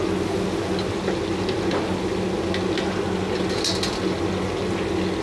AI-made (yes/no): no